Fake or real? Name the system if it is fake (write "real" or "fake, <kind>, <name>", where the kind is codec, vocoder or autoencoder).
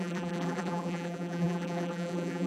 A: fake, vocoder, BigVGAN v2